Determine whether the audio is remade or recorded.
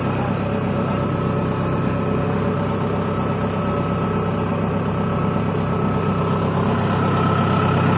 recorded